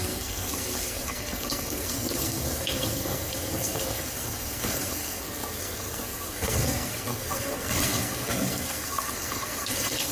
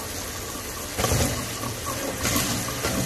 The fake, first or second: first